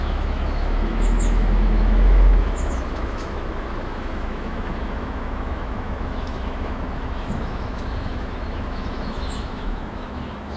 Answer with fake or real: fake